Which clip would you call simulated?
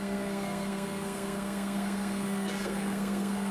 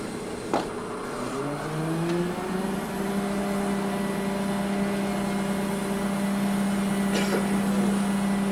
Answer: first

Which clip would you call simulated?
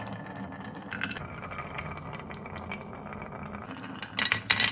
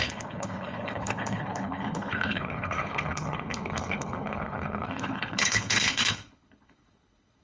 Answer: second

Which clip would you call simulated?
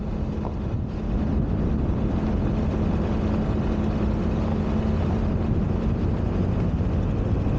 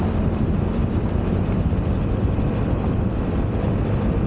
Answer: second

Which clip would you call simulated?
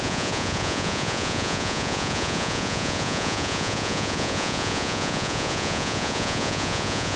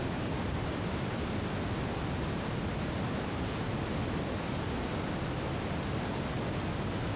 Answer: first